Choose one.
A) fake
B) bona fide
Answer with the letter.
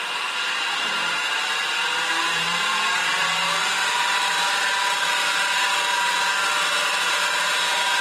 A